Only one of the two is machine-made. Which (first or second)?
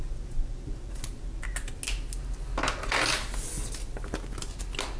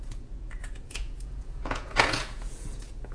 second